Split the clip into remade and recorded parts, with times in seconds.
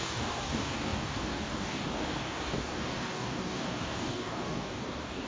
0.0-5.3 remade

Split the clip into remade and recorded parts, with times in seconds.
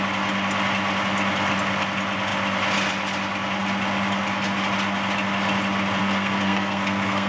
0.0-6.0 recorded; 6.0-7.3 remade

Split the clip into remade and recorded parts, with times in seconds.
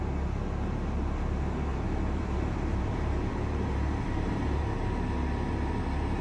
0.0-1.7 recorded; 1.7-4.6 remade; 4.6-6.2 recorded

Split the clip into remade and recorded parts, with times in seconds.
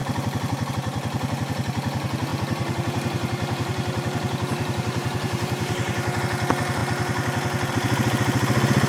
0.0-2.3 recorded; 2.3-6.2 remade; 6.2-8.9 recorded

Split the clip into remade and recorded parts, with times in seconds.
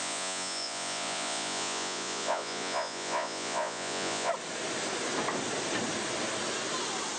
0.0-4.3 remade; 4.3-7.2 recorded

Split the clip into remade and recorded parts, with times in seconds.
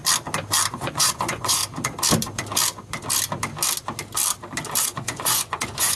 0.0-0.7 recorded; 0.7-1.6 remade; 1.6-4.8 recorded; 4.8-6.0 remade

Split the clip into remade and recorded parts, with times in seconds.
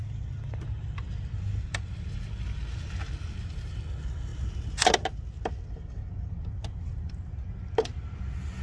0.0-8.6 recorded